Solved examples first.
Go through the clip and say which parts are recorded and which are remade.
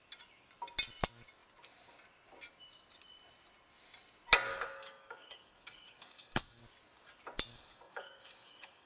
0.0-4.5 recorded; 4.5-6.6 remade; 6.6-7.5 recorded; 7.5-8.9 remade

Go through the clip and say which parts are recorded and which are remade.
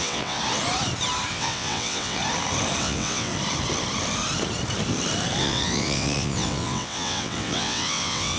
0.0-0.4 remade; 0.4-1.3 recorded; 1.3-2.2 remade; 2.2-2.8 recorded; 2.8-3.3 remade; 3.3-5.4 recorded; 5.4-8.4 remade